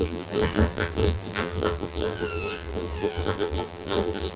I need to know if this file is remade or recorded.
remade